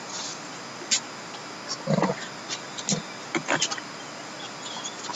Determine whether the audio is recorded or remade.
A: recorded